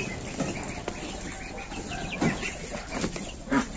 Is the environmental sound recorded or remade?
recorded